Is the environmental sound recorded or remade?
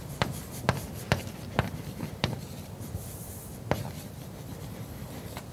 remade